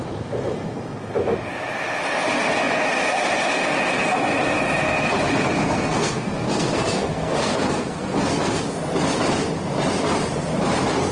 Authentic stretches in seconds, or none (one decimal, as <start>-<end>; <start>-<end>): 0.0-5.6; 8.6-11.1